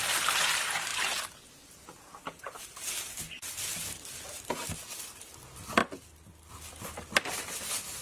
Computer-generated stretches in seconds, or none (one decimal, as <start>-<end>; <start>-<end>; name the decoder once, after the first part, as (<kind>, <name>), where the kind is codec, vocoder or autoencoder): none